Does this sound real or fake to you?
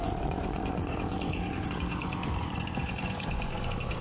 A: fake